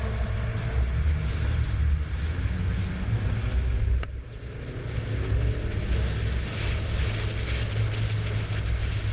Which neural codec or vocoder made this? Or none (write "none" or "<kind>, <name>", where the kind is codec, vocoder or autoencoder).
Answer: none